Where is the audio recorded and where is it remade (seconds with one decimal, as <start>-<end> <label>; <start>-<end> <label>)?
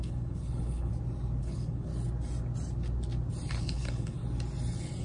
0.0-0.9 remade; 0.9-1.4 recorded; 1.4-1.9 remade; 1.9-3.6 recorded; 3.6-4.2 remade; 4.2-5.0 recorded